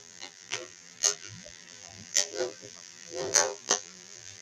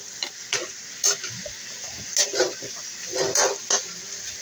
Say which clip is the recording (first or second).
second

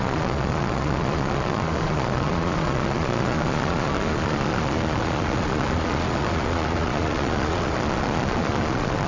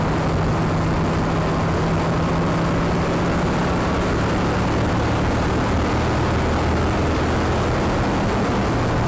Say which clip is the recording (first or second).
second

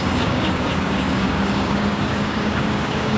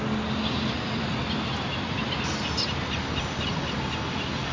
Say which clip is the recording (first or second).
second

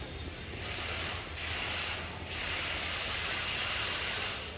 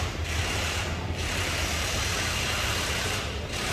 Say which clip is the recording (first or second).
first